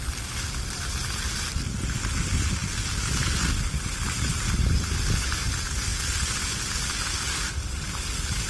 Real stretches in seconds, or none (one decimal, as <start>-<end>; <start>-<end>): 0.0-8.5